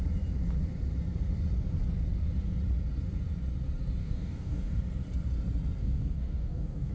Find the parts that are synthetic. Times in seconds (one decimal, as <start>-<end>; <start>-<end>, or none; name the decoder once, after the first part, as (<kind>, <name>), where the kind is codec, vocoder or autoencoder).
4.0-4.8 (codec, DAC); 5.8-6.9